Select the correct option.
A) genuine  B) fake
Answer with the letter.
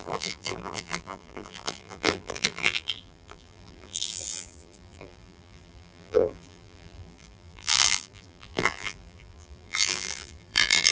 B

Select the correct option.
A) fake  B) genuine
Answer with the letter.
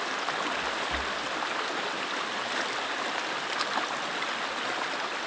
B